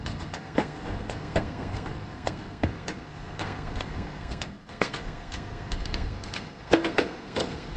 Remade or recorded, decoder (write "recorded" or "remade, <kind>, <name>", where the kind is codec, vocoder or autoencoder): remade, codec, SNAC